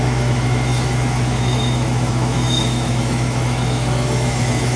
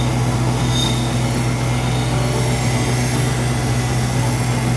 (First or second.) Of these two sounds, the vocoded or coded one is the first